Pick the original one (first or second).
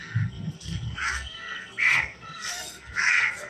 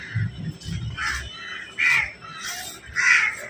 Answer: second